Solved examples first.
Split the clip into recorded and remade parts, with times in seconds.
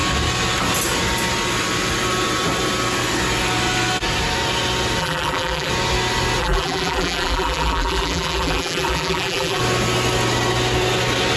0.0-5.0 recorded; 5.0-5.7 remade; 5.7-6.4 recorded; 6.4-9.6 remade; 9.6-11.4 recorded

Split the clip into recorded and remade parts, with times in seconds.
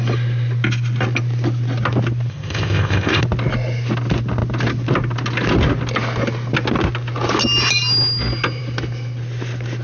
0.0-2.3 recorded; 2.3-3.2 remade; 3.2-9.8 recorded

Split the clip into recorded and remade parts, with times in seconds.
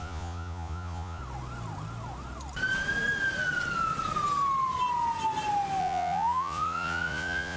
0.0-1.2 remade; 1.2-5.8 recorded; 5.8-7.6 remade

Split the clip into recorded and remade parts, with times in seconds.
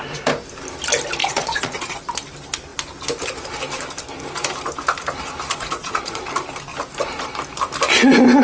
0.0-1.2 recorded; 1.2-2.0 remade; 2.0-5.5 recorded; 5.5-6.2 remade; 6.2-8.4 recorded